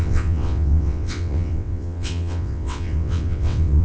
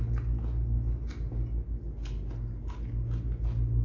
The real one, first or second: second